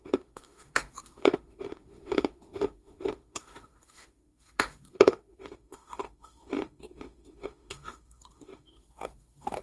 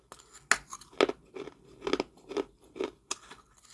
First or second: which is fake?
first